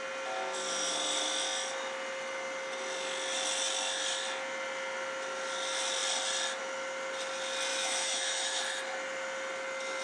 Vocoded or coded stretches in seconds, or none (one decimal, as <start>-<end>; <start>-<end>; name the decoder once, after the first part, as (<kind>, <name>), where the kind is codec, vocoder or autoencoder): 7.7-8.6 (autoencoder, DAC-VAE)